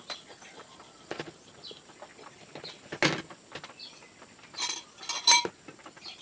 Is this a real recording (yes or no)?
yes